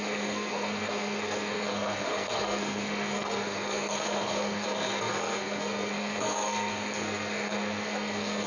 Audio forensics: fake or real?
fake